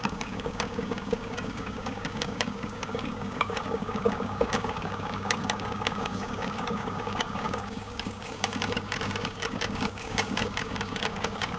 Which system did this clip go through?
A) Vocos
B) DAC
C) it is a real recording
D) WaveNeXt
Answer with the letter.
B